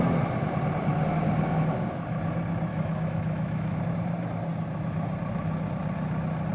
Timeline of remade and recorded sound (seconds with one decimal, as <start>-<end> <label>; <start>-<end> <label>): 0.0-2.7 recorded; 2.7-3.8 remade; 3.8-6.5 recorded